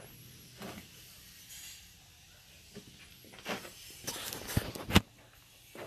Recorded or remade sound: recorded